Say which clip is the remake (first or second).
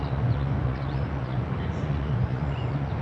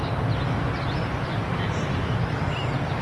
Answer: first